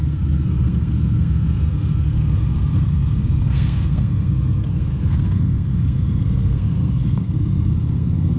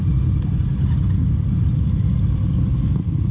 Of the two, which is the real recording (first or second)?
second